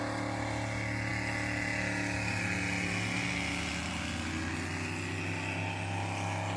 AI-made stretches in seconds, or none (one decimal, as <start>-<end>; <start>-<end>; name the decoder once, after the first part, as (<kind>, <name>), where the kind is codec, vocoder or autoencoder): none